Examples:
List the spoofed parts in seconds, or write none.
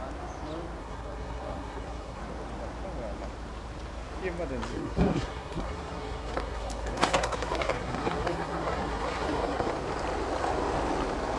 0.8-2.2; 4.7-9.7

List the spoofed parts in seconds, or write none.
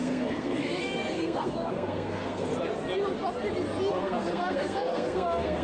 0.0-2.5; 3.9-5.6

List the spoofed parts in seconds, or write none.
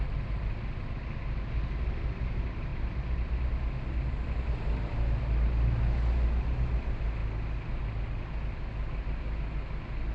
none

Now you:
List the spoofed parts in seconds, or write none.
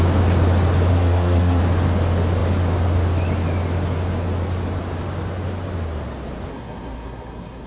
0.9-1.6; 6.5-7.7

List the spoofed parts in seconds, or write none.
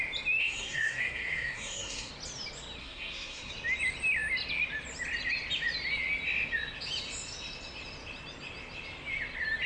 0.4-2.1; 2.8-3.5